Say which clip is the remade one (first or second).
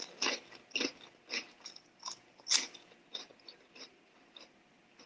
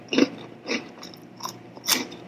second